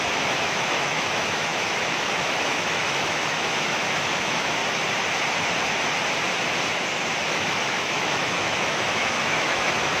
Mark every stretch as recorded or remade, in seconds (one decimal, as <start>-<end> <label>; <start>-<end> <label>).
0.0-4.6 remade; 4.6-7.3 recorded; 7.3-10.0 remade